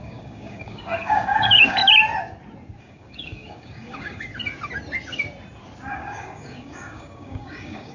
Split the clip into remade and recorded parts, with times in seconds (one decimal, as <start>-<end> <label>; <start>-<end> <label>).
0.0-1.8 remade; 1.8-2.8 recorded; 2.8-4.3 remade; 4.3-5.9 recorded; 5.9-7.9 remade